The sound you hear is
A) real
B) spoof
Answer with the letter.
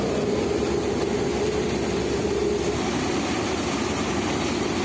A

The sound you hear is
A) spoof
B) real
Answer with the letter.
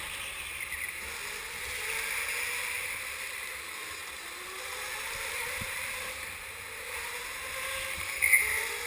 B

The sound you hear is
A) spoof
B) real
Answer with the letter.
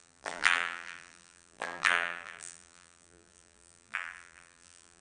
A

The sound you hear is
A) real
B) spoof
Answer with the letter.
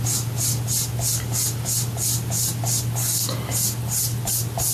A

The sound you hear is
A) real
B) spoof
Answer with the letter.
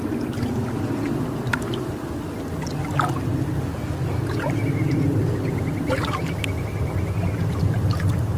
A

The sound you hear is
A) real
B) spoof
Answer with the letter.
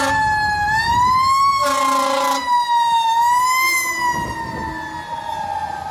A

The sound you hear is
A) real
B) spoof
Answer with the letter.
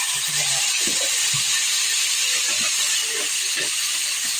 A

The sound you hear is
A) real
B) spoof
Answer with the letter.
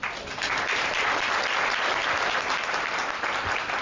A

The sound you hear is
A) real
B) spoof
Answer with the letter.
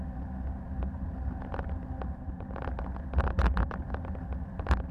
A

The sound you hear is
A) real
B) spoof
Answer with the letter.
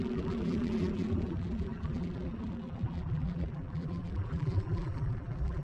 B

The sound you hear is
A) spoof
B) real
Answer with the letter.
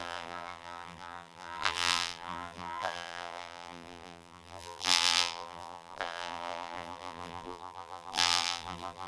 A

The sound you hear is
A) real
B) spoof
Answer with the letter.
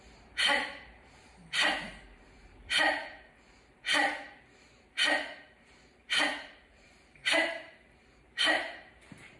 B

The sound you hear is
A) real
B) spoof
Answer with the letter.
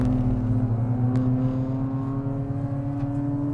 A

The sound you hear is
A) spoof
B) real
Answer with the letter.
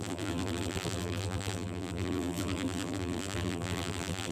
A